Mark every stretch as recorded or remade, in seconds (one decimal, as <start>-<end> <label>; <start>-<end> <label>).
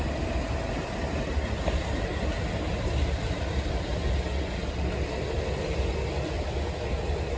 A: 0.0-7.4 recorded